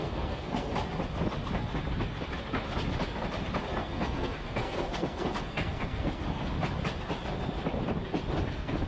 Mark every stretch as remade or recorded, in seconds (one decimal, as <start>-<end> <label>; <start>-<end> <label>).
0.0-0.7 remade; 0.7-3.8 recorded; 3.8-6.4 remade; 6.4-8.5 recorded; 8.5-8.9 remade